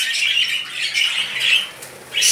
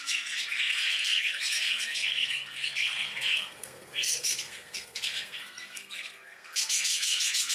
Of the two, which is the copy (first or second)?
second